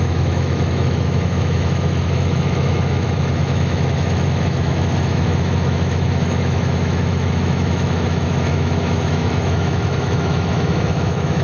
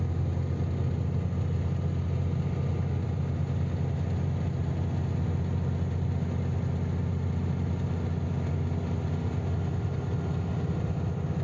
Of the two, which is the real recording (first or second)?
second